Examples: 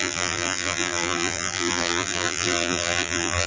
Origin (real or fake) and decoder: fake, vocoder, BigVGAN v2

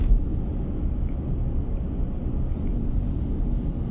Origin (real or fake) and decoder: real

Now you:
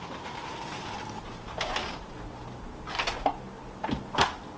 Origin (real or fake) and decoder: real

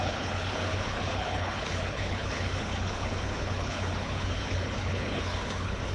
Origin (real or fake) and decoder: fake, codec, HILCodec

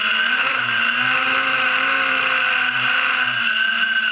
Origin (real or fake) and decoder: real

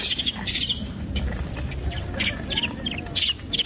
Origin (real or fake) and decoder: real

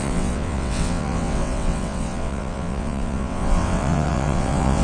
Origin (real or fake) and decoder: fake, vocoder, WaveNeXt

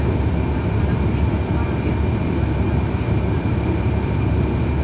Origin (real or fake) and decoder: real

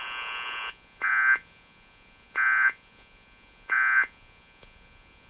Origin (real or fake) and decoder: fake, vocoder, Vocos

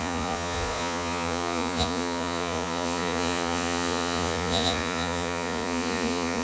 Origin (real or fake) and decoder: fake, vocoder, Vocos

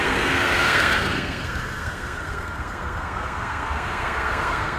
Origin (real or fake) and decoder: fake, codec, SNAC